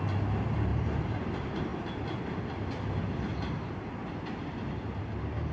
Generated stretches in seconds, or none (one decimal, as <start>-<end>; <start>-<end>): none